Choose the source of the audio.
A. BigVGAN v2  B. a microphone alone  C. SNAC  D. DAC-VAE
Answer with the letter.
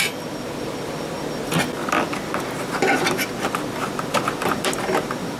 B